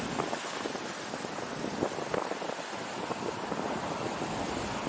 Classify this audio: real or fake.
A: real